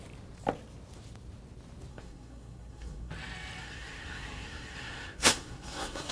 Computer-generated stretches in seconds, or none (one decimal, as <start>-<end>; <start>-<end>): 1.9-3.1; 3.6-6.1